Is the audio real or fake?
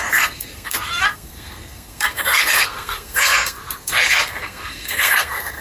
fake